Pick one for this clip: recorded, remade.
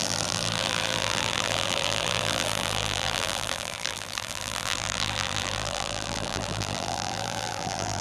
remade